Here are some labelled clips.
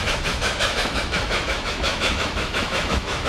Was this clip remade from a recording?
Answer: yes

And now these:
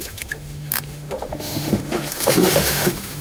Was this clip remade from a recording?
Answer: yes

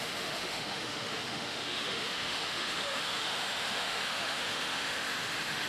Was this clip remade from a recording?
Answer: yes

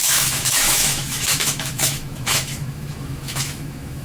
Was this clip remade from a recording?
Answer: yes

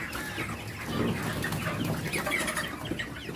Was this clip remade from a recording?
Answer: no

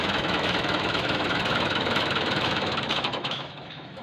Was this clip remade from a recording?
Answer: yes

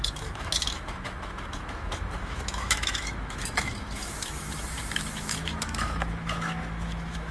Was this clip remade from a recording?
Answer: yes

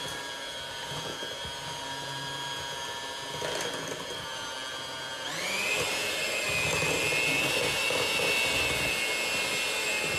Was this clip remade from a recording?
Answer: no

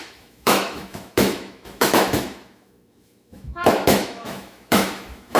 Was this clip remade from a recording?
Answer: yes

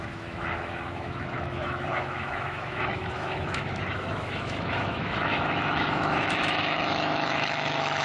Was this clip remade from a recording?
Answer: yes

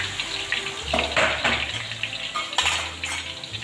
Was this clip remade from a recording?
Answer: no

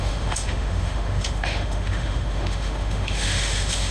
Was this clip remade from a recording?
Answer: yes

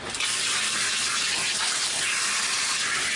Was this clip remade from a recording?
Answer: no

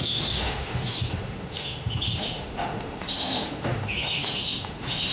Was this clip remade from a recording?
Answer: yes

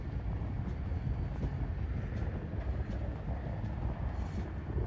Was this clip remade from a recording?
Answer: no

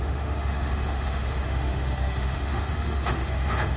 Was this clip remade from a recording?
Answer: yes